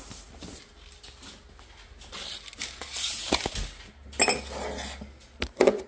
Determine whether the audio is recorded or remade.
recorded